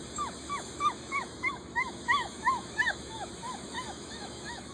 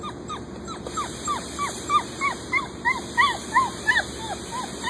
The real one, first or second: second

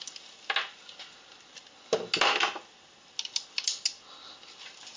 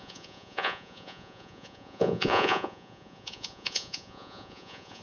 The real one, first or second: first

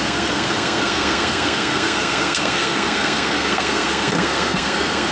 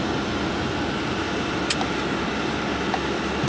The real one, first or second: second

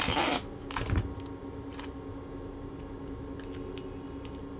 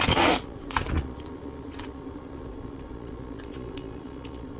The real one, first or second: first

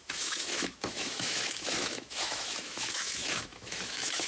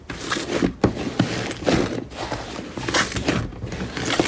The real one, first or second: second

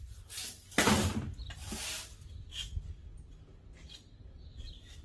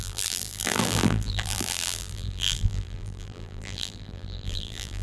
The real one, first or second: first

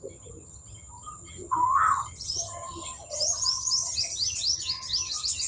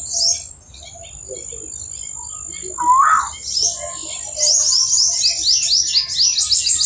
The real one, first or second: second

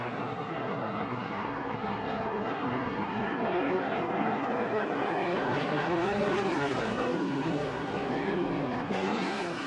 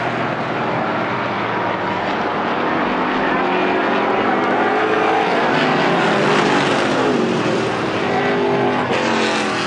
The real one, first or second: second